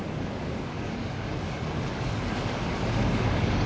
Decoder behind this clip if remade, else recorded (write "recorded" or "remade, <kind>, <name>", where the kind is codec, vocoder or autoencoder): remade, codec, DAC